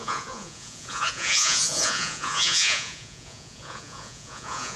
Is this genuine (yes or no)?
no